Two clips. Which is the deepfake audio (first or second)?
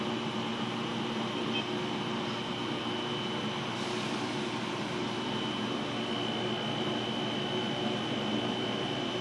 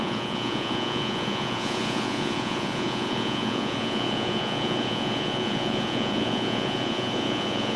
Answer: second